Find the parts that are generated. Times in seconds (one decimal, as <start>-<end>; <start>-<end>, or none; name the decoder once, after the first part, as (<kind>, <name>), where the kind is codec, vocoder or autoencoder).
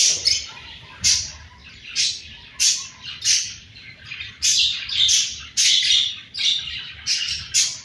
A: 0.0-1.6 (vocoder, BigVGAN v2); 3.9-7.8